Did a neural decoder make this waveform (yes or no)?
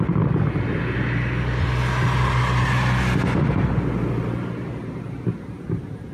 no